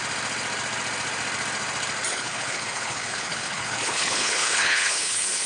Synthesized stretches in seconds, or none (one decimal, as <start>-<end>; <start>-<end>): 2.1-5.5